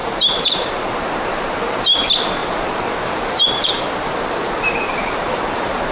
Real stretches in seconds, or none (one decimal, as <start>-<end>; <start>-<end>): 0.7-2.4; 3.9-4.9